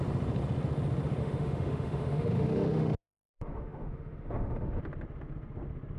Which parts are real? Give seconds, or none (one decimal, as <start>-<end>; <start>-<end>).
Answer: 0.0-1.2; 4.8-6.0